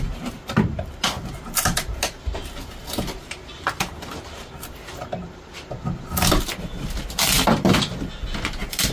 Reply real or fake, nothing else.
real